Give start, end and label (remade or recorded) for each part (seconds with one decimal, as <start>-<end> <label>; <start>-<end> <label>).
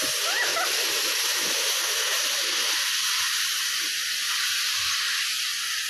0.0-0.5 recorded; 0.5-1.7 remade; 1.7-5.9 recorded